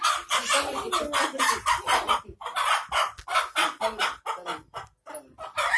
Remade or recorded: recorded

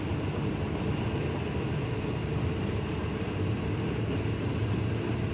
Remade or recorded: recorded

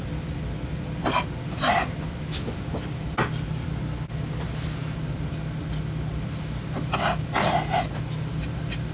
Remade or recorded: recorded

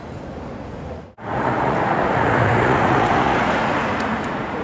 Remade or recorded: remade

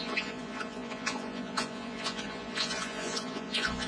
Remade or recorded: remade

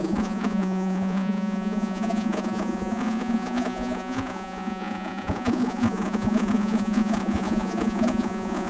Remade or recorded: remade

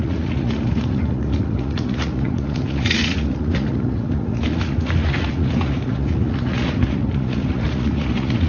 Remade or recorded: remade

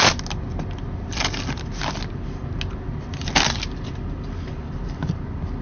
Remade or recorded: recorded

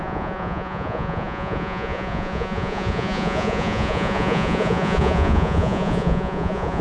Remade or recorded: remade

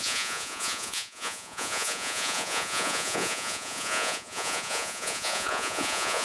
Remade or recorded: remade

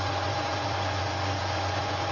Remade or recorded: remade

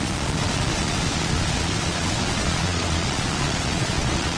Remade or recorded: remade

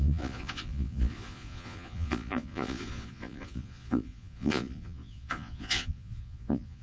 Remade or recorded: remade